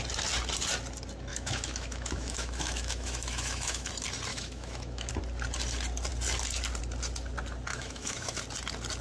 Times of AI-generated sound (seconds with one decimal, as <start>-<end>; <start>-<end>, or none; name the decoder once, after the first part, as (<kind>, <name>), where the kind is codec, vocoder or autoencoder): 1.3-3.9 (autoencoder, DAC-VAE); 4.3-5.1; 7.7-8.4